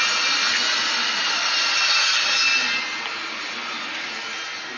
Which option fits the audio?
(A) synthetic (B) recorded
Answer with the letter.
B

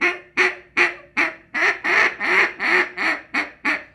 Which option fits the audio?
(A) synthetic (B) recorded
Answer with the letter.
A